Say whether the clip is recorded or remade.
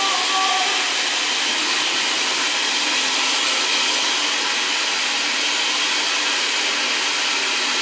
recorded